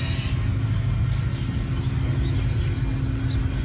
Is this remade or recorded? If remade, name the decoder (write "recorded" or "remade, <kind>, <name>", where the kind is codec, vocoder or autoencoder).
recorded